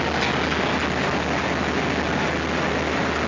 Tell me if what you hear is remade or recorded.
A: recorded